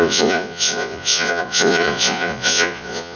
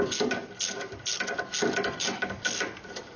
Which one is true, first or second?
second